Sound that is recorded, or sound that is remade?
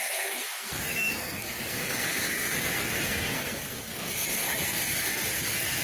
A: remade